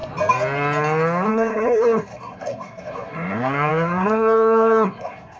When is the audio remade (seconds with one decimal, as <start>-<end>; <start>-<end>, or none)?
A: 1.3-5.4